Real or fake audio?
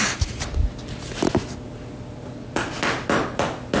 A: real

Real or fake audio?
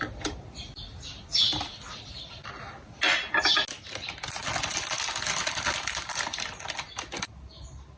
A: real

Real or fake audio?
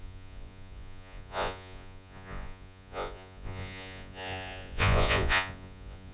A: fake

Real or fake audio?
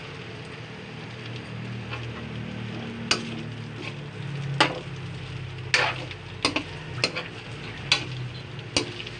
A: real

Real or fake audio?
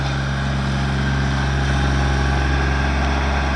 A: real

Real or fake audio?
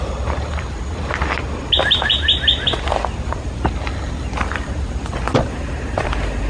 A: real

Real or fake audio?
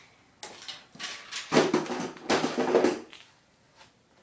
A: real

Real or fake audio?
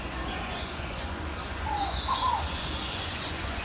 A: fake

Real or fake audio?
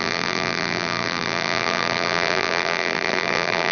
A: fake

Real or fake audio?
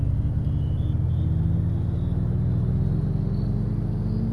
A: real